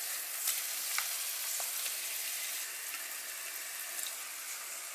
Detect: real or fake real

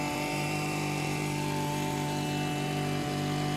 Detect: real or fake fake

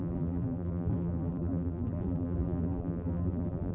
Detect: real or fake fake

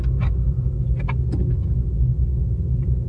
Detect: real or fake real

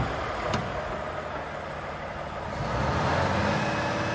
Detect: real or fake real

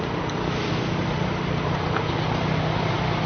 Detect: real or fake real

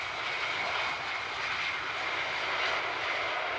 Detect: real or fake real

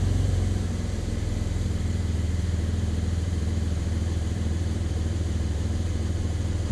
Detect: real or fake fake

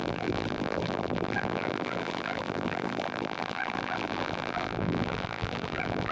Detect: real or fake fake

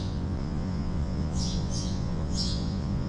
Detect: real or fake fake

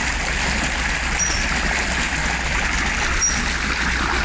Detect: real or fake real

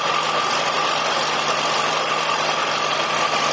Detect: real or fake real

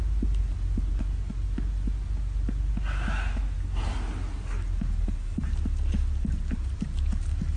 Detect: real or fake real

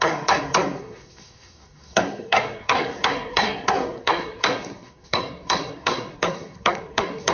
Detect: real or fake fake